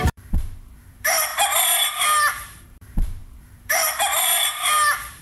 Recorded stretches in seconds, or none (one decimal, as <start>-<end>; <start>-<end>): 1.3-1.9

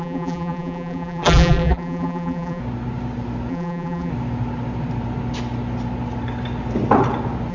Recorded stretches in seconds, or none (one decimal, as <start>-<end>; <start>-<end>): 2.6-3.5; 4.1-7.5